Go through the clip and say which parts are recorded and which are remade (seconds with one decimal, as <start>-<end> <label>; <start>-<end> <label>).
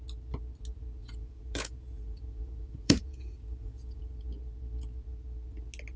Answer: 0.0-1.0 recorded; 1.0-4.0 remade; 4.0-6.0 recorded